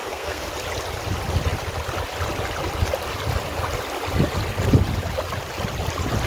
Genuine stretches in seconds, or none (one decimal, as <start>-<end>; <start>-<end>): 0.5-6.3